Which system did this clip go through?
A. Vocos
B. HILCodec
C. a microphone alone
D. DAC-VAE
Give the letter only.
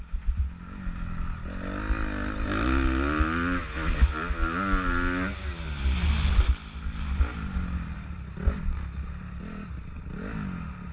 C